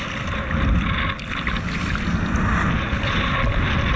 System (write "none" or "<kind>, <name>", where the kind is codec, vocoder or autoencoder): none